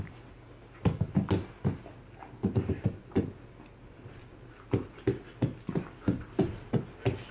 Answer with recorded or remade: recorded